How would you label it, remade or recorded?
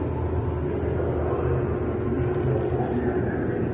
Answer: recorded